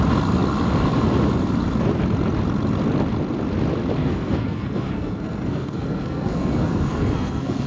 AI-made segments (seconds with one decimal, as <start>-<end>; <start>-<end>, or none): 4.0-7.7